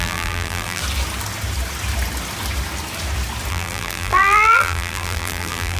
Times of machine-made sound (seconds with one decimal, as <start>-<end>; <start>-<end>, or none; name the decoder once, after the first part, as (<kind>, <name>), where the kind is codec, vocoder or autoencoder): 0.0-0.8 (vocoder, BigVGAN v2); 3.5-5.8